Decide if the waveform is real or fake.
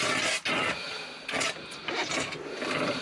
real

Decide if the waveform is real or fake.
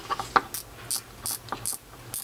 real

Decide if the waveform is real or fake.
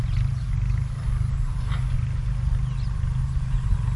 real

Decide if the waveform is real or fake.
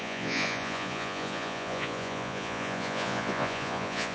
fake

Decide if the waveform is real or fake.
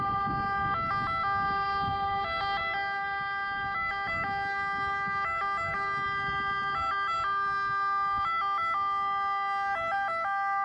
real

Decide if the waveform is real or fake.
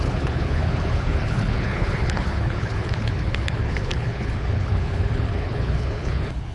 fake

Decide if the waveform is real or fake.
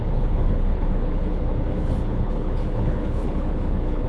fake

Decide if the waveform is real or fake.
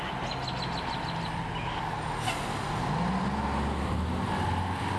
real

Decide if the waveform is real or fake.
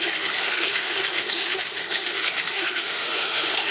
fake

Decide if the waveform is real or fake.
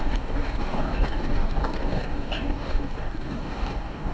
fake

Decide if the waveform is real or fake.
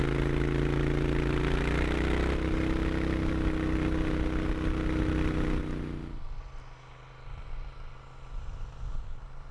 real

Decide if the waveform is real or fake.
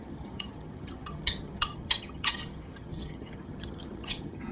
fake